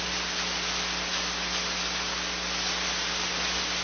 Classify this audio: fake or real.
real